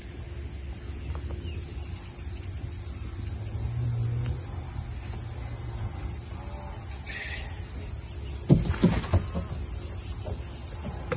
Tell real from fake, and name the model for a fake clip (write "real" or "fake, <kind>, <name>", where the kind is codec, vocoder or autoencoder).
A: real